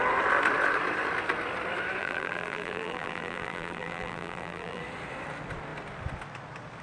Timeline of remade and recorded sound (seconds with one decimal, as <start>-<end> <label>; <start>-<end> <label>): 0.0-2.0 recorded; 2.0-4.8 remade; 4.8-6.8 recorded